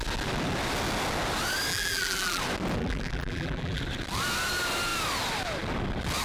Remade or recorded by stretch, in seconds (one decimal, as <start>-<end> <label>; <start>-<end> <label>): 0.0-1.7 recorded; 1.7-2.4 remade; 2.4-2.8 recorded; 2.8-3.8 remade; 3.8-6.2 recorded